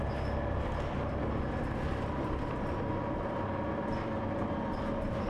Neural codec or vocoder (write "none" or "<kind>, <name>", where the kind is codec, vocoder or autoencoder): vocoder, BigVGAN v2